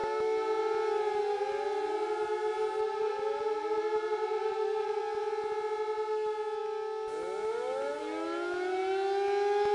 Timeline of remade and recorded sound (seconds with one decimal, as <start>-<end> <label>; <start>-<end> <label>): 0.0-2.5 recorded; 2.5-5.0 remade; 5.0-9.7 recorded